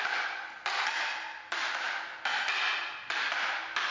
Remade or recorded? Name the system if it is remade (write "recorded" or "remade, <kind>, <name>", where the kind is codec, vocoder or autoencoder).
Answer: recorded